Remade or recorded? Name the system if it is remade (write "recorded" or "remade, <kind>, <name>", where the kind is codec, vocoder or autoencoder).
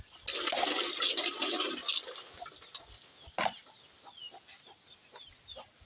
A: recorded